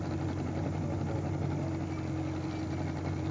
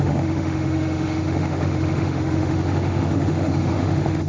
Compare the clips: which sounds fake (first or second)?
second